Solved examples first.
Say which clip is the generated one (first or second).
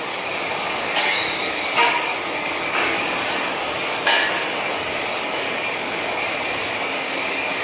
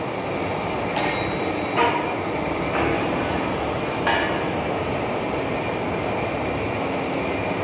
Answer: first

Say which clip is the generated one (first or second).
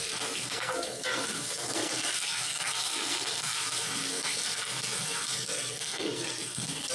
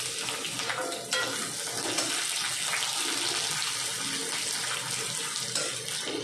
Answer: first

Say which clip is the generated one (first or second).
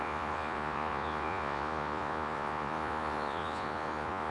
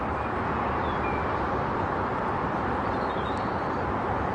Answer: first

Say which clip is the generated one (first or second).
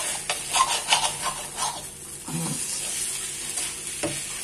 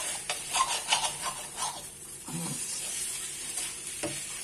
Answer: second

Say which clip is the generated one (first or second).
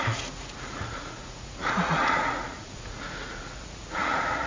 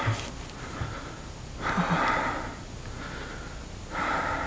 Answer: first